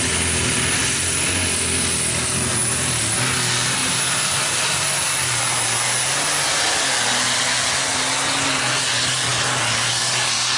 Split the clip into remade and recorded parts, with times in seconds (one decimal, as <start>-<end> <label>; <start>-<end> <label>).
0.0-3.8 recorded; 3.8-5.2 remade; 5.2-10.6 recorded